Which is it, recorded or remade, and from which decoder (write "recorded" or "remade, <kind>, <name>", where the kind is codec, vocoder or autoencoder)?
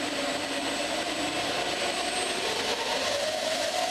remade, vocoder, BigVGAN v2